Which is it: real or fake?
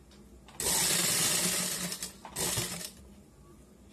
real